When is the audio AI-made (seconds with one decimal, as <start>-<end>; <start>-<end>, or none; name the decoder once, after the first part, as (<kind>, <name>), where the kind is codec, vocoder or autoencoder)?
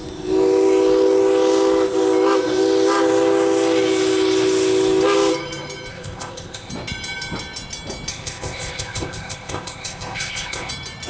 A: 5.9-6.7 (codec, ZipCodec); 8.1-10.7